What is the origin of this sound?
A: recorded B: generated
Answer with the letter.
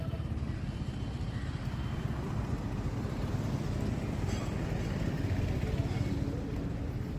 A